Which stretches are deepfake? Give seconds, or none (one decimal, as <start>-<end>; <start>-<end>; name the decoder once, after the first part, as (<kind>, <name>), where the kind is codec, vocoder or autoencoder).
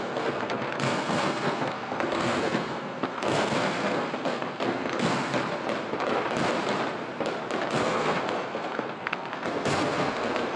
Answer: 0.0-5.3 (codec, SNAC); 7.7-10.6